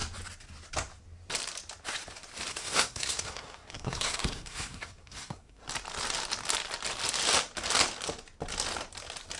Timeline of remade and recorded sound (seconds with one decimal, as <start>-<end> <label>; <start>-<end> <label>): 0.0-2.5 recorded; 2.5-5.6 remade; 5.6-9.4 recorded